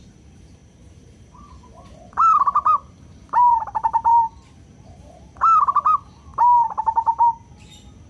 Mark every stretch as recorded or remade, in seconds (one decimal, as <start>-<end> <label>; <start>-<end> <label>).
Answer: 0.0-4.1 remade; 4.1-4.7 recorded; 4.7-6.3 remade; 6.3-8.1 recorded

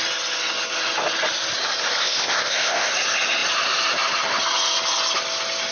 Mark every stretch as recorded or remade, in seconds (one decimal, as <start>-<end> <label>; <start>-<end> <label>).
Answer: 0.0-2.0 recorded; 2.0-2.9 remade; 2.9-5.7 recorded

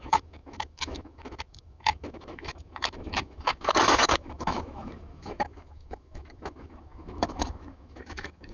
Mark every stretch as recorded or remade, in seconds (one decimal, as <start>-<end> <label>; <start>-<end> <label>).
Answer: 0.0-8.5 remade